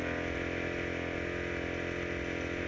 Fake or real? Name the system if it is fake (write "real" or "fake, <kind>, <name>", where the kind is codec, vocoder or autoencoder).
real